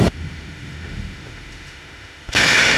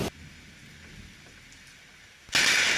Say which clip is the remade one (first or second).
first